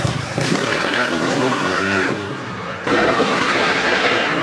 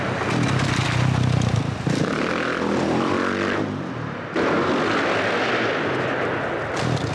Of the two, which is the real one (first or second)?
second